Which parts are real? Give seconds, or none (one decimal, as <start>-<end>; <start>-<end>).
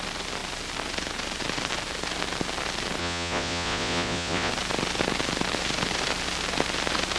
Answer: 0.0-3.0; 4.5-7.2